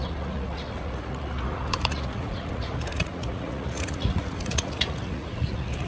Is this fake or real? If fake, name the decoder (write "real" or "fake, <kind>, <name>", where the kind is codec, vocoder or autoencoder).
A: fake, vocoder, Vocos